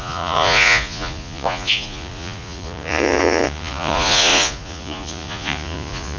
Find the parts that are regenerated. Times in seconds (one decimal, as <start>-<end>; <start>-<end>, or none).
0.0-6.2